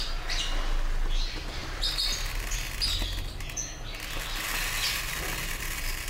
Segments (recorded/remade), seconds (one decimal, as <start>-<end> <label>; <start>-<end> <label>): 0.0-6.1 recorded